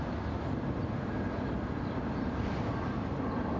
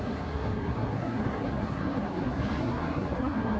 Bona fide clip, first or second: first